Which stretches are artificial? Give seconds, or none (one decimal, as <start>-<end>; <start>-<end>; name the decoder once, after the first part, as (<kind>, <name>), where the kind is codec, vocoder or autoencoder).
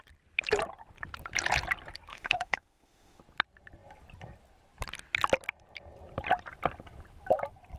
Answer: 2.1-3.2 (autoencoder, DAC-VAE)